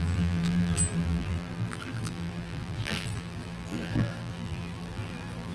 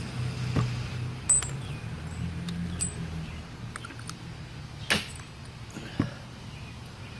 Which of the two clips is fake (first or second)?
first